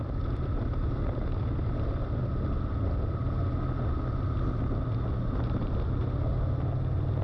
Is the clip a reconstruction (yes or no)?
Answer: no